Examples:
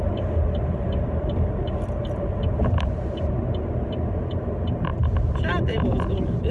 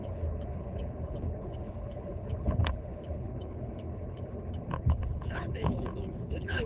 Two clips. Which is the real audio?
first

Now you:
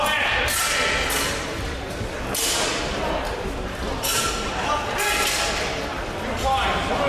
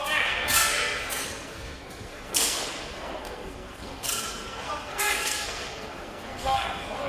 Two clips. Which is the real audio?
first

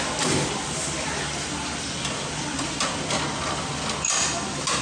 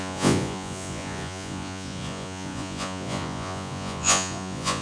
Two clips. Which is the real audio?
first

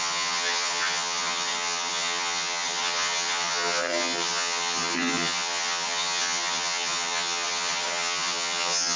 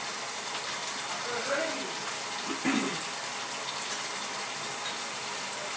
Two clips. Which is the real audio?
second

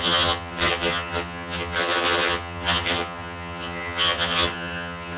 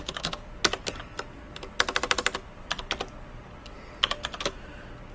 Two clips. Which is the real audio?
second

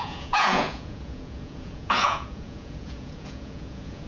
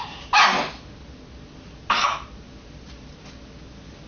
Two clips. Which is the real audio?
second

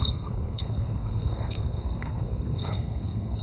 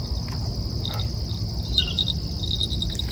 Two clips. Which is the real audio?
second